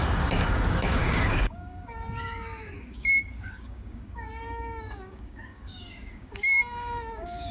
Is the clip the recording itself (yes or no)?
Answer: no